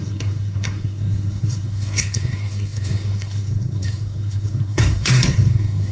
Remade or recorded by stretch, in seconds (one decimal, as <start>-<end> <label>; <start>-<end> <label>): 0.0-5.9 remade

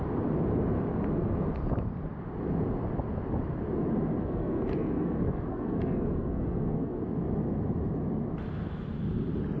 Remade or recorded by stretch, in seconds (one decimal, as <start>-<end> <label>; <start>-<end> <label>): 0.0-4.2 recorded; 4.2-7.0 remade; 7.0-9.6 recorded

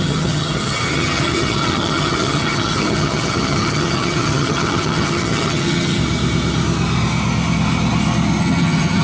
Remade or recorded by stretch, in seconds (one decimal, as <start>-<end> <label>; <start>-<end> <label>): 0.0-6.0 remade; 6.0-8.4 recorded; 8.4-9.0 remade